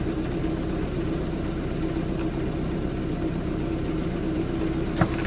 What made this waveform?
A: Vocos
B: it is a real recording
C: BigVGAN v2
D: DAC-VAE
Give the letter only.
B